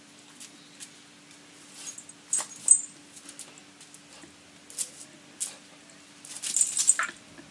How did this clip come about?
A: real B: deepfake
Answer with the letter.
A